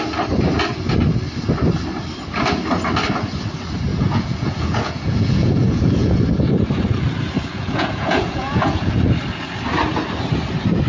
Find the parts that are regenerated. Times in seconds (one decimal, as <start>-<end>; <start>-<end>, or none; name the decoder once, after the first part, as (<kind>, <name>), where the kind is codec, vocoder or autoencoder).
3.9-6.2 (vocoder, Vocos); 7.5-9.0